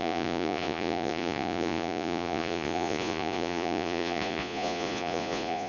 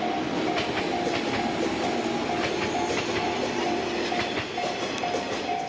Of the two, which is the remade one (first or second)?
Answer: first